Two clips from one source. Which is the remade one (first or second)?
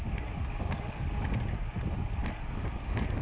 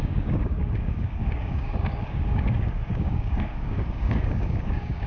second